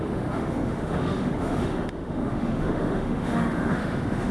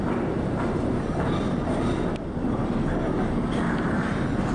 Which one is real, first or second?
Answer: second